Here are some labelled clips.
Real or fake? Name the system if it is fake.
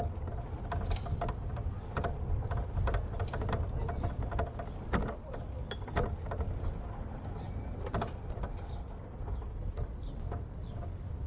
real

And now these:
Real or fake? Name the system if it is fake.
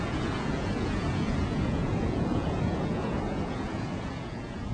fake, vocoder, Vocos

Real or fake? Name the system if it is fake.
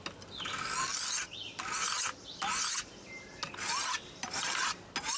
real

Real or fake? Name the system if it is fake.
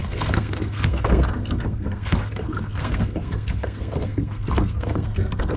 fake, codec, SNAC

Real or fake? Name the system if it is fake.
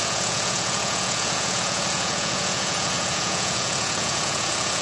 fake, vocoder, Vocos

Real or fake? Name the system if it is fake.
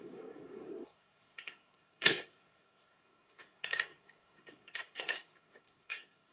fake, codec, SNAC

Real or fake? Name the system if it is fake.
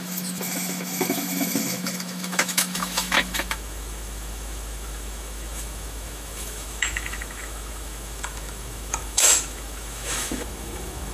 fake, autoencoder, DAC-VAE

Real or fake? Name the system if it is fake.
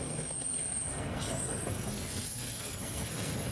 fake, codec, SNAC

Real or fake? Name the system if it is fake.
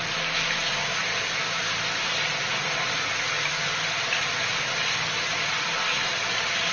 real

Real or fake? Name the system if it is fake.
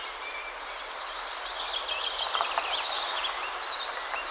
real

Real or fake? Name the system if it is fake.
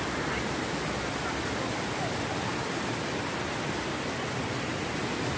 real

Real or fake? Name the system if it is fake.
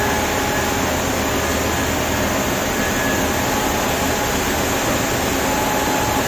real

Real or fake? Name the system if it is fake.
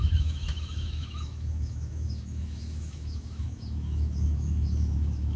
fake, autoencoder, DAC-VAE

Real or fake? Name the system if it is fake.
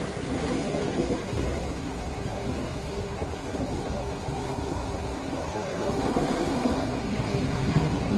fake, codec, SNAC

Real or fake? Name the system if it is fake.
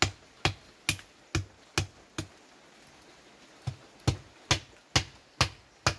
real